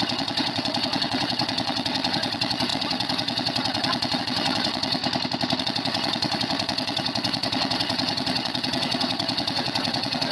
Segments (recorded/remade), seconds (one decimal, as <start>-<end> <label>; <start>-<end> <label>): 0.0-5.0 remade; 5.0-5.6 recorded; 5.6-10.3 remade